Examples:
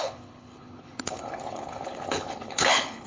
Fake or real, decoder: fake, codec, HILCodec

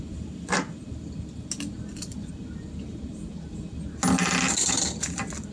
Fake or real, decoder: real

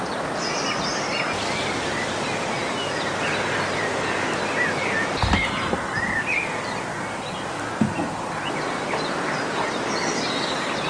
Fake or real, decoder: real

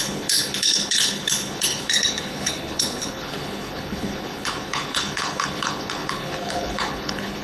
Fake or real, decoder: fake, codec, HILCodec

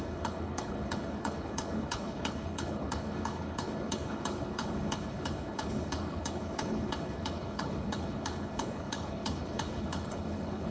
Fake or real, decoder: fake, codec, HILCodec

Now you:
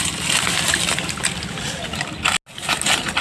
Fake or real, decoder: real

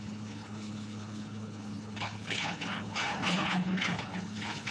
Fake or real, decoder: fake, codec, HILCodec